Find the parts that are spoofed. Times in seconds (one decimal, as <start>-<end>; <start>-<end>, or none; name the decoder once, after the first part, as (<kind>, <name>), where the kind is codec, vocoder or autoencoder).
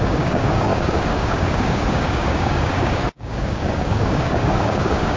0.0-5.2 (codec, DAC)